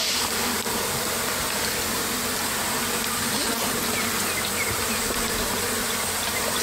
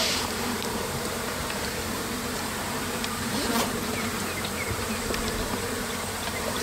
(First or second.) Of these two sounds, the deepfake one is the second